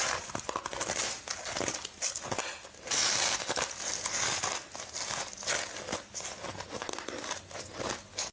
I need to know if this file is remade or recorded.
recorded